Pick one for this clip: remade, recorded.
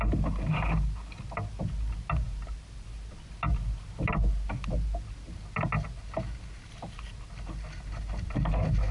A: recorded